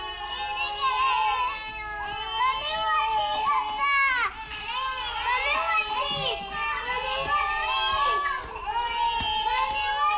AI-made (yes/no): no